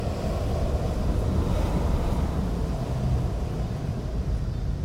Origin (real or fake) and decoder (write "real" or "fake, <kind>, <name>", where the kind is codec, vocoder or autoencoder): real